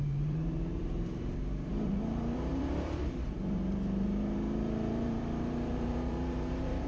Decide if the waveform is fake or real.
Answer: fake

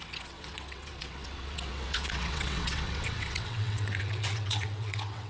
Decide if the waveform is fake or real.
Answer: fake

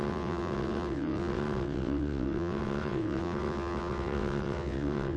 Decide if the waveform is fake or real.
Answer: fake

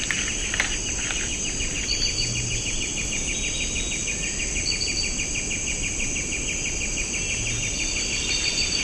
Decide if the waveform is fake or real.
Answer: real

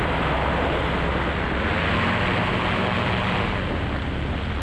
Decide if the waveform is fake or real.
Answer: real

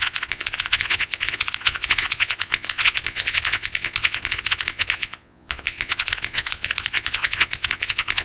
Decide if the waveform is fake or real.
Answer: fake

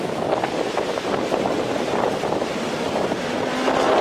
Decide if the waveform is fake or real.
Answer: real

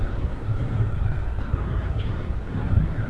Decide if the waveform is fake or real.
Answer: fake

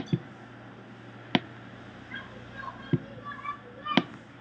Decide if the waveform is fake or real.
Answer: real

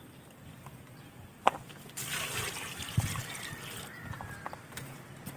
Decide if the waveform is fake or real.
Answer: real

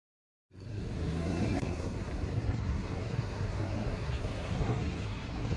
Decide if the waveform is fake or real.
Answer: fake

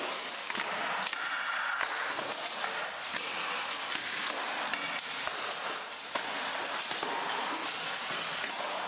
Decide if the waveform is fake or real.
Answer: real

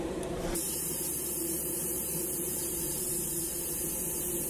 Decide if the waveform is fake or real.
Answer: fake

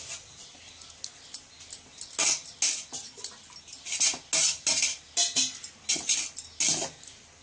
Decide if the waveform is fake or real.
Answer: real